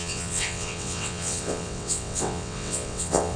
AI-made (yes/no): yes